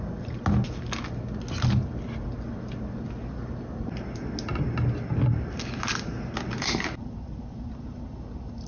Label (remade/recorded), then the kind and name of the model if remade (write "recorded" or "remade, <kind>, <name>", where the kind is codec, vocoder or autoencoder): recorded